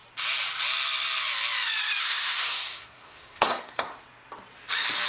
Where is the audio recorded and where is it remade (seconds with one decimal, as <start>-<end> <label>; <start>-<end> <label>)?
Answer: 0.0-2.0 recorded; 2.0-3.9 remade; 3.9-5.1 recorded